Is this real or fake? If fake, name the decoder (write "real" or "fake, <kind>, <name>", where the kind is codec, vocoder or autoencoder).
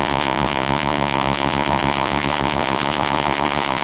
fake, vocoder, Vocos